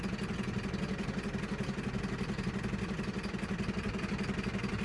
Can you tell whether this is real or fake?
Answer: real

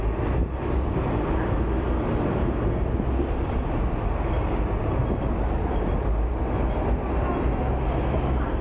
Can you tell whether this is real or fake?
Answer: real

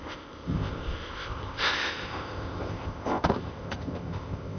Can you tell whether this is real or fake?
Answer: fake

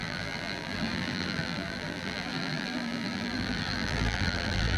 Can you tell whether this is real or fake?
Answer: fake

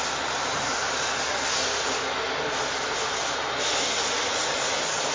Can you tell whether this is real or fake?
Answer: real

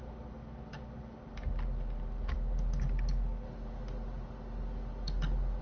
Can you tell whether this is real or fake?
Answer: real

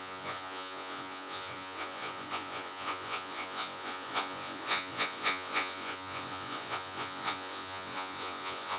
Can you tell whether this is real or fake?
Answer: fake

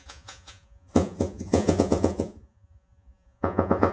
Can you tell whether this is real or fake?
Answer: fake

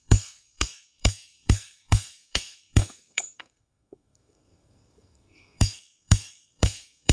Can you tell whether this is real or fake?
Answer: fake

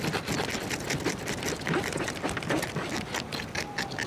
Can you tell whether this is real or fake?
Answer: real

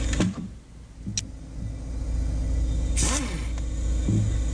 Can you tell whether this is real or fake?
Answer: real